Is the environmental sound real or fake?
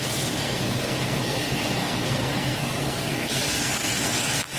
fake